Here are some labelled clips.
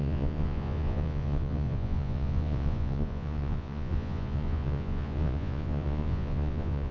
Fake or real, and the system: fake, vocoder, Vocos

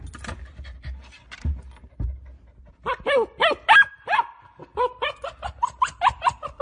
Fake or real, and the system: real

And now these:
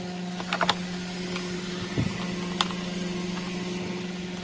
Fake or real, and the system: real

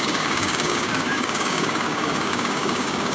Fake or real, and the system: fake, codec, DAC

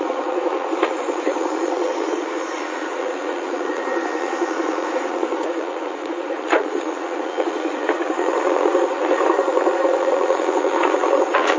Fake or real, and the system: fake, vocoder, Vocos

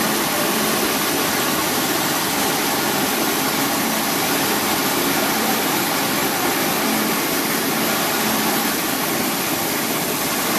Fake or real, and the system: fake, vocoder, BigVGAN v2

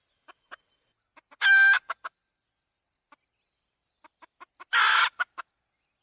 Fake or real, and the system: real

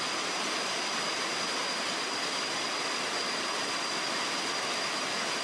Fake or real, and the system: real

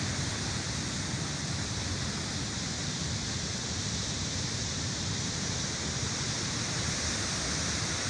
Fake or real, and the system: fake, vocoder, BigVGAN v2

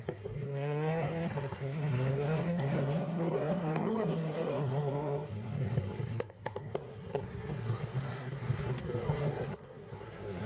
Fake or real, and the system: fake, codec, SNAC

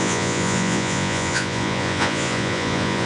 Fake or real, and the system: fake, vocoder, Vocos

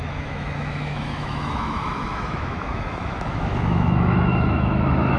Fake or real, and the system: fake, autoencoder, DAC-VAE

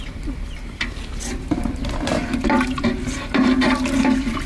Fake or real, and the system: fake, vocoder, BigVGAN v2